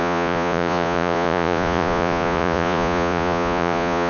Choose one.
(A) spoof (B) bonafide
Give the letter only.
A